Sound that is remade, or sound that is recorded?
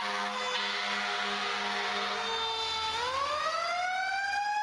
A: recorded